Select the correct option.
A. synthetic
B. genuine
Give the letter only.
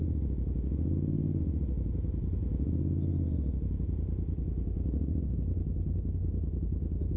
B